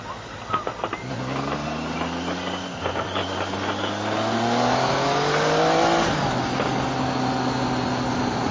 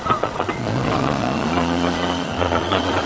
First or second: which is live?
first